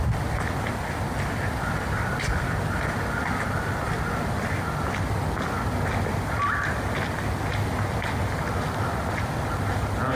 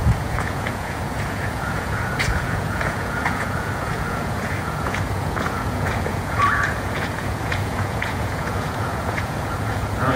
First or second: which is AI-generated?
second